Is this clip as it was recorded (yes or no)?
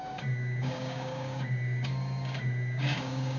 no